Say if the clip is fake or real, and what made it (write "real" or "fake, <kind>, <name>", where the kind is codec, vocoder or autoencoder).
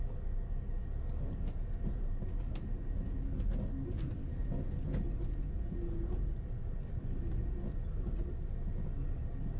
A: real